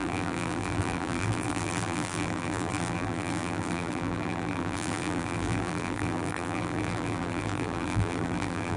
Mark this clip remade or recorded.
remade